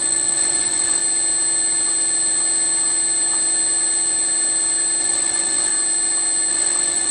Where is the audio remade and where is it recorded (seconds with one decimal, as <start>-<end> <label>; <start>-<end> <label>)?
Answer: 0.0-1.0 remade; 1.0-5.0 recorded; 5.0-5.7 remade; 5.7-6.5 recorded; 6.5-7.1 remade

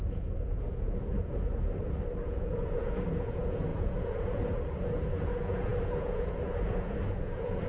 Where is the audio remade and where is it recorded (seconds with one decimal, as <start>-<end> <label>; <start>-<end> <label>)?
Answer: 0.0-1.5 remade; 1.5-2.2 recorded; 2.2-7.7 remade

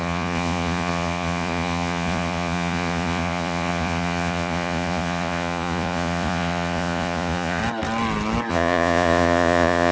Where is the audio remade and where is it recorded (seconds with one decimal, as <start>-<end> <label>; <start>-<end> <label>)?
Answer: 0.0-7.6 remade; 7.6-8.5 recorded; 8.5-9.9 remade

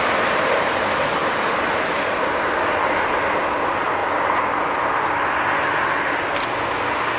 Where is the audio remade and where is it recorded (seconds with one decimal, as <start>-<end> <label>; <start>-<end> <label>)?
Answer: 0.0-7.2 recorded

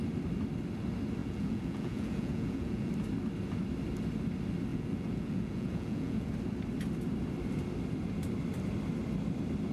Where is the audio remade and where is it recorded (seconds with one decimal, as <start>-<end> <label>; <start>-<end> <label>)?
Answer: 0.0-1.2 recorded; 1.2-2.9 remade; 2.9-4.7 recorded; 4.7-6.3 remade; 6.3-9.7 recorded

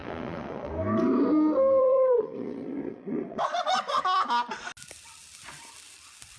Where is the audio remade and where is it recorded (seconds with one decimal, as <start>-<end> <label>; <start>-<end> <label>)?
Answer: 0.0-0.7 remade; 0.7-1.8 recorded; 1.8-4.0 remade; 4.0-6.4 recorded